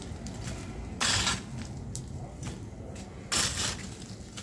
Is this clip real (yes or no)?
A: yes